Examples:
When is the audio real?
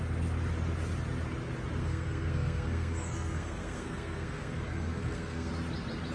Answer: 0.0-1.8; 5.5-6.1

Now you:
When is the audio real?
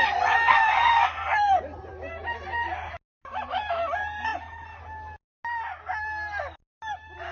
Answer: 0.0-0.5; 1.5-7.3